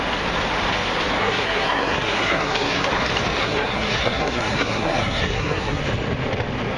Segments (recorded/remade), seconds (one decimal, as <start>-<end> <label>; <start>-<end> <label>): 0.0-1.2 recorded; 1.2-2.9 remade; 2.9-3.4 recorded; 3.4-5.8 remade; 5.8-6.8 recorded